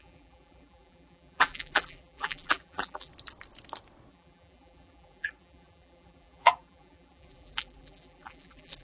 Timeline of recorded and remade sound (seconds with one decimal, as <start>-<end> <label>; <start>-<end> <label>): 0.0-3.1 remade; 3.1-4.1 recorded; 4.1-8.8 remade